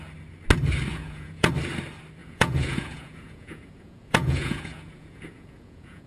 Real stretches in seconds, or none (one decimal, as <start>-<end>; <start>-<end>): 0.0-0.9; 1.5-2.2